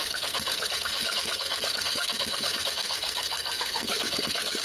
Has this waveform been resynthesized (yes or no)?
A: yes